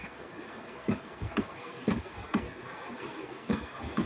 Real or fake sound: fake